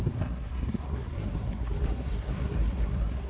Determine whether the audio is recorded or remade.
remade